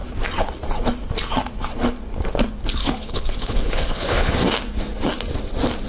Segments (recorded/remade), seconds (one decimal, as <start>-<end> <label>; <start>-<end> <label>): 0.0-2.8 recorded; 2.8-4.3 remade; 4.3-5.9 recorded